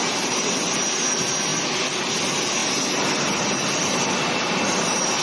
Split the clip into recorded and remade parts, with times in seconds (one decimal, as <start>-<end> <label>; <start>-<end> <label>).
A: 0.0-5.2 recorded